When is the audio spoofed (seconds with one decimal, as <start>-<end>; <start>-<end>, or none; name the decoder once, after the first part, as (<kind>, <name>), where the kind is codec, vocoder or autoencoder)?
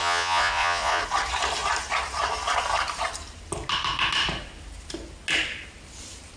0.0-1.0 (vocoder, Vocos)